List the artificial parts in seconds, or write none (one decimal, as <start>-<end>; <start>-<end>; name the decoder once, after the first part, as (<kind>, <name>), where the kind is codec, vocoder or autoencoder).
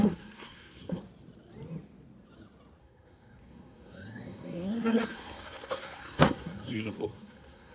0.0-1.0 (codec, SNAC); 2.8-7.7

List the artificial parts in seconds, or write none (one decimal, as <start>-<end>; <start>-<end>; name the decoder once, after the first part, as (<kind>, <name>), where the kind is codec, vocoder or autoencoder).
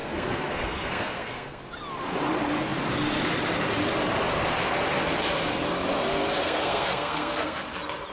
0.0-1.6 (codec, SNAC); 6.4-7.6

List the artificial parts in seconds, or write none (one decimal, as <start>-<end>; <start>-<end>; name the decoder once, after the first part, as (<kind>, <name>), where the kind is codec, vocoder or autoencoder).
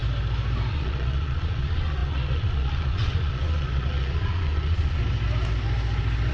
0.7-5.0 (vocoder, Vocos)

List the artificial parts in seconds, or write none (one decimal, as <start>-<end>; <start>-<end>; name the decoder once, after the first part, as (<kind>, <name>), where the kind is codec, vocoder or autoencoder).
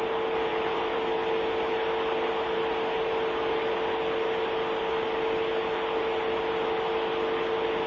0.5-1.0 (vocoder, BigVGAN v2)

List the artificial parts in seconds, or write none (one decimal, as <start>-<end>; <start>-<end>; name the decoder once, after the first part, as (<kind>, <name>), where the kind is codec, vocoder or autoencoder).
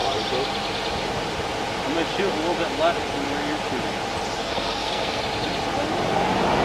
4.4-5.2 (codec, SNAC)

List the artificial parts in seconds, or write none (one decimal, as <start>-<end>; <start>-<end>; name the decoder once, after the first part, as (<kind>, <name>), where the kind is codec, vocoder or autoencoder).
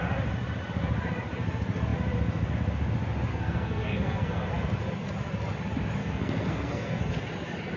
3.3-4.5 (codec, SNAC); 6.0-7.0